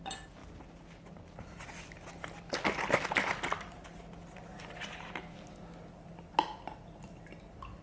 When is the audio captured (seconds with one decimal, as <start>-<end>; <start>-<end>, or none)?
0.0-7.8